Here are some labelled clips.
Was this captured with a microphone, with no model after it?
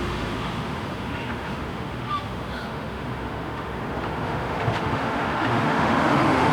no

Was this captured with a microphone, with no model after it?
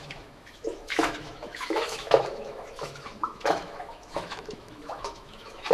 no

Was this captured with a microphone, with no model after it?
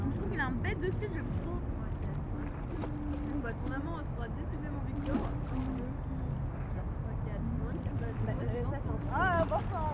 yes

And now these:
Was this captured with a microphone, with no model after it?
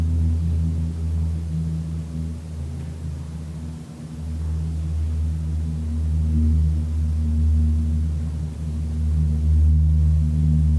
yes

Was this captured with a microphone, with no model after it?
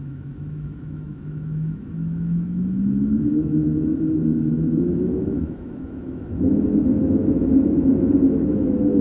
no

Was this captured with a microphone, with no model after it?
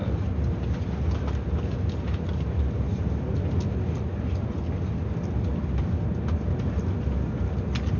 yes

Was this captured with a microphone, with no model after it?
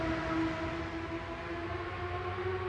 yes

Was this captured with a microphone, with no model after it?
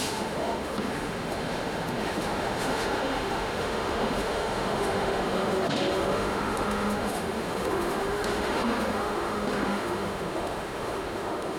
no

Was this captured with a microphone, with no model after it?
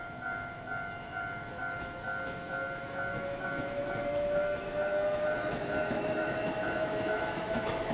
no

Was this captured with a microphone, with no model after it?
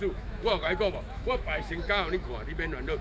no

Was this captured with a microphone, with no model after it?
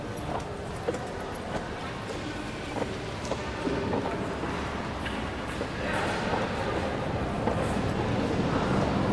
yes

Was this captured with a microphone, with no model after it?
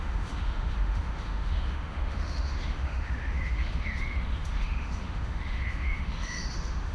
no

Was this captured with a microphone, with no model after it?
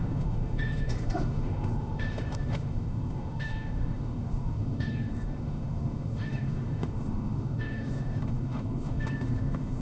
no